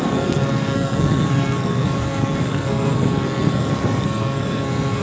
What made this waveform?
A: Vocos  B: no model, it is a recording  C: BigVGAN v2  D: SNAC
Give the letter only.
D